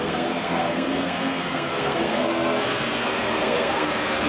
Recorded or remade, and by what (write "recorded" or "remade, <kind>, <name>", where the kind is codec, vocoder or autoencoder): remade, codec, SNAC